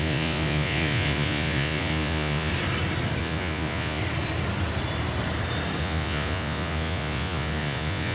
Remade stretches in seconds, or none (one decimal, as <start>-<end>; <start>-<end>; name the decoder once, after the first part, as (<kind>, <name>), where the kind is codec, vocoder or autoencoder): 0.0-2.5 (vocoder, Vocos); 3.2-4.0; 5.8-8.1